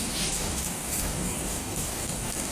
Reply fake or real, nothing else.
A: fake